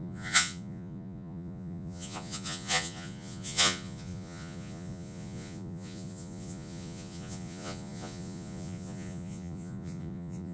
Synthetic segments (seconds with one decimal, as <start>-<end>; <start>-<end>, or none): 0.0-10.5